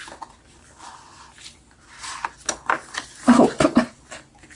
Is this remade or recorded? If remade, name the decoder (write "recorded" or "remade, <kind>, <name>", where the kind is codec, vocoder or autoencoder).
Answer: recorded